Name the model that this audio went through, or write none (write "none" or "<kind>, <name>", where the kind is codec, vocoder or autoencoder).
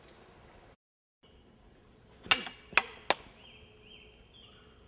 none